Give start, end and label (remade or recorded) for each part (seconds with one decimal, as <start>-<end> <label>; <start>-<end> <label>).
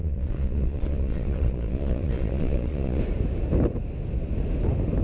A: 0.0-3.0 remade; 3.0-5.0 recorded